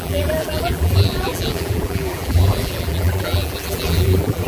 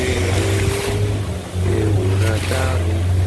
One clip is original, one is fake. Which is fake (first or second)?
first